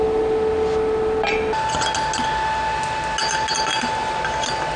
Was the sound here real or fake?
real